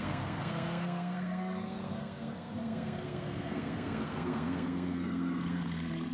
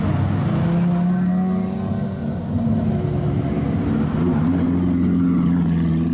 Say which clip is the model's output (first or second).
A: first